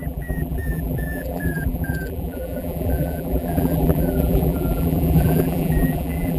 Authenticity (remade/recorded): remade